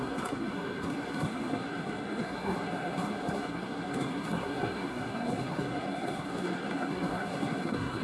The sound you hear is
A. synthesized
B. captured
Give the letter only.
A